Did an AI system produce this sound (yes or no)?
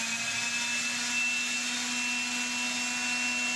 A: no